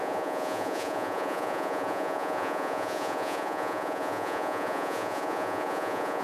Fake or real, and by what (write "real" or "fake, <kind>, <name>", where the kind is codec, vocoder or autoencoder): fake, vocoder, Vocos